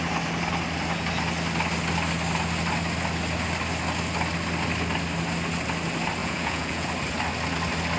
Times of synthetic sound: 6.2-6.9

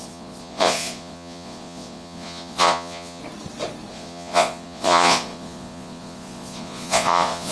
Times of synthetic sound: 0.0-3.2; 3.9-7.5